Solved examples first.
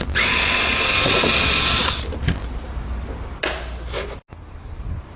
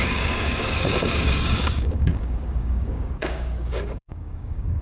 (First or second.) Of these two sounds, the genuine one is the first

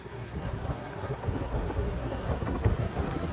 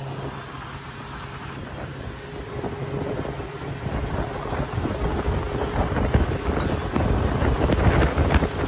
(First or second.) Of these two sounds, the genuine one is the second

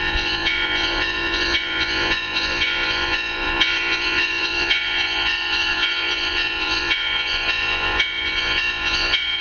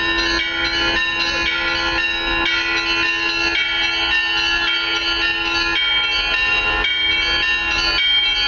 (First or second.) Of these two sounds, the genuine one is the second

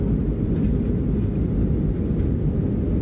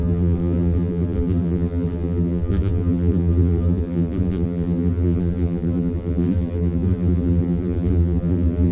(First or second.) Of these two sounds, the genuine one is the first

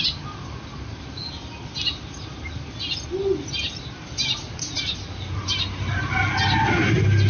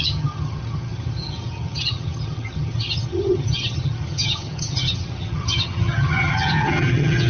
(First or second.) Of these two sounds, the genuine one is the first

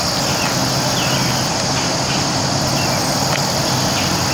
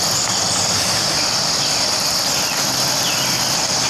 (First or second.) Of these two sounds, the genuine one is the first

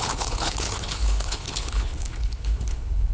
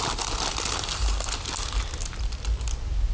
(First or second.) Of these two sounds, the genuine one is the second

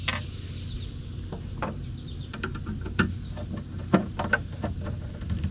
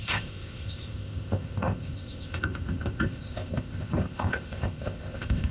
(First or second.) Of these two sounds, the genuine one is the first